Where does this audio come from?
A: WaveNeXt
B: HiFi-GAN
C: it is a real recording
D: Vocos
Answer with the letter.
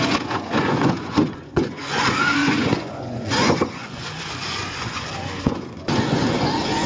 D